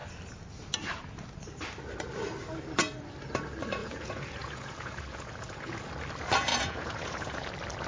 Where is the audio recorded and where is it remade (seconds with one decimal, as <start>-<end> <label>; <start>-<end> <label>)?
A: 0.0-3.8 recorded; 3.8-5.9 remade; 5.9-6.5 recorded; 6.5-7.5 remade; 7.5-7.9 recorded